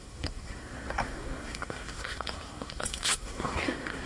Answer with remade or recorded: remade